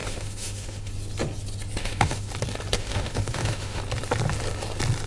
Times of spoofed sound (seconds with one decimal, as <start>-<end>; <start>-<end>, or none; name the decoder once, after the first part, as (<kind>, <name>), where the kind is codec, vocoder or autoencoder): 0.0-0.9 (autoencoder, DAC-VAE); 1.8-2.3; 2.8-3.8